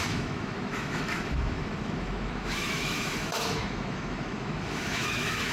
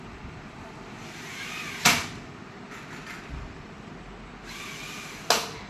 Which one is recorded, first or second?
second